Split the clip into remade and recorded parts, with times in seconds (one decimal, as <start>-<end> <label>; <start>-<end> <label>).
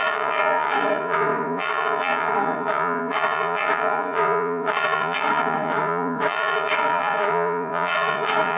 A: 0.0-8.6 remade